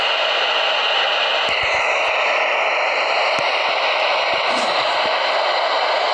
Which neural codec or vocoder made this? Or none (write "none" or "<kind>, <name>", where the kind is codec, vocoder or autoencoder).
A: none